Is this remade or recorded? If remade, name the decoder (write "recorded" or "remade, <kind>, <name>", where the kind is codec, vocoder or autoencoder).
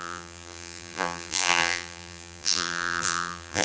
remade, vocoder, BigVGAN v2